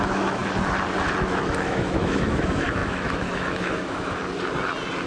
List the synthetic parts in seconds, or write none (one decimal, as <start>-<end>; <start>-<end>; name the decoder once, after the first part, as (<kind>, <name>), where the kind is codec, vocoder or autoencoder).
0.0-0.4 (autoencoder, DAC-VAE); 1.2-4.2